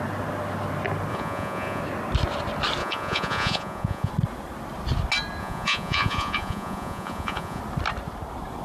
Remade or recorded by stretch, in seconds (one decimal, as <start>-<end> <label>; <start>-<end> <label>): 0.0-1.1 recorded; 1.1-1.8 remade; 1.8-2.8 recorded; 2.8-4.1 remade; 4.1-5.4 recorded; 5.4-7.6 remade; 7.6-8.6 recorded